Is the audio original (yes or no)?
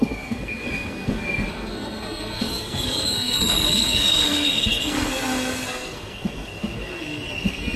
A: no